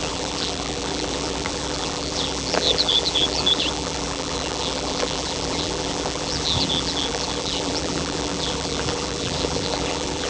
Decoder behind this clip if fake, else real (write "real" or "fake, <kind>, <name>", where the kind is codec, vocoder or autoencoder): fake, vocoder, BigVGAN v2